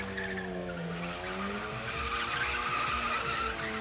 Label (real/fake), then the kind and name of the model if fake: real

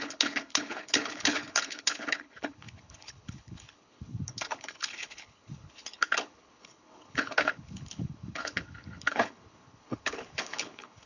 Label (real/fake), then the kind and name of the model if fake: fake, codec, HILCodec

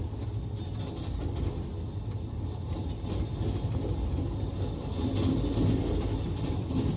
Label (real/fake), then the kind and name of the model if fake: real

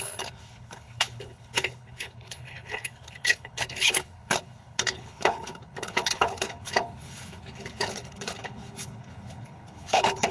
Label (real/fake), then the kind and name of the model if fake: fake, codec, HILCodec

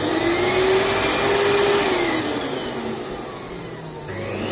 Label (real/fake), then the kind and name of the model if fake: real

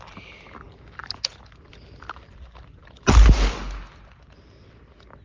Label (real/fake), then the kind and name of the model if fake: real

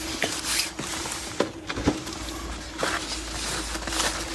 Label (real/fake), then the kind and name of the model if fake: real